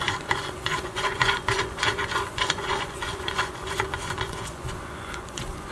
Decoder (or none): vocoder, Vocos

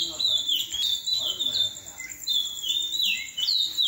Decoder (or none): none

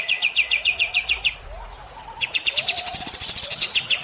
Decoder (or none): vocoder, Vocos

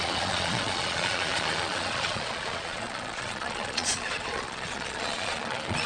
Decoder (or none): vocoder, Vocos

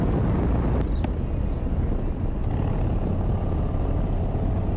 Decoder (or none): none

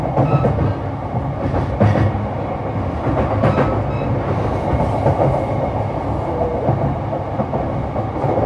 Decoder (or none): none